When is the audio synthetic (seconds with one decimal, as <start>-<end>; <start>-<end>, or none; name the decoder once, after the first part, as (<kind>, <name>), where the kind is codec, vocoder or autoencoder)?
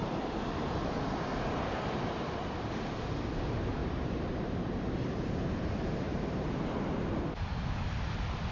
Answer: 0.0-0.6 (vocoder, BigVGAN v2); 3.8-6.6